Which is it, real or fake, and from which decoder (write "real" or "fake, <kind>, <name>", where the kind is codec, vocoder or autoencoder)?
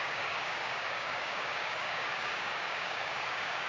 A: fake, codec, DAC